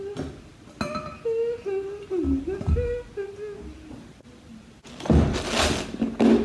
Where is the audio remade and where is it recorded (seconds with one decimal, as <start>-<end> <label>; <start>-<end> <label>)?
0.0-6.4 recorded